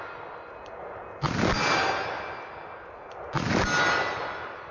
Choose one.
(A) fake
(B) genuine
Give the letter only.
B